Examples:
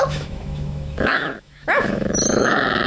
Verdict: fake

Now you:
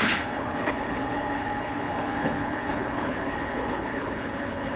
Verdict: fake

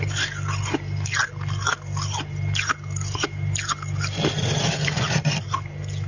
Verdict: real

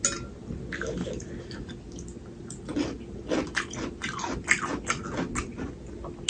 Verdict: real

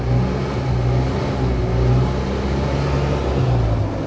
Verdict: real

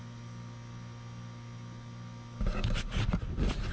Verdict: real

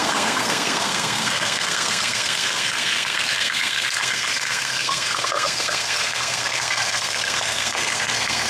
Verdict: fake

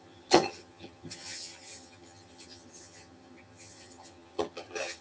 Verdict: fake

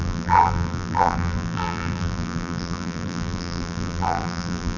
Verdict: fake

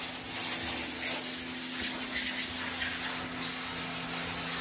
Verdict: real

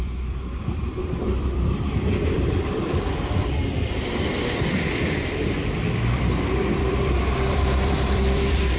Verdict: fake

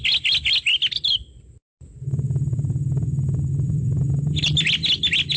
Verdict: real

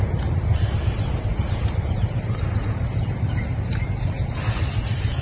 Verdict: fake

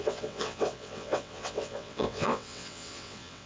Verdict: fake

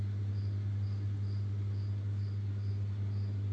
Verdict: real